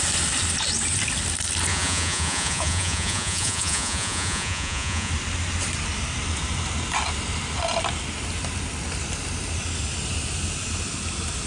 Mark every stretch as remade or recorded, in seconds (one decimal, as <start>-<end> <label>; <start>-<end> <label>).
0.0-1.7 recorded; 1.7-5.1 remade; 5.1-11.5 recorded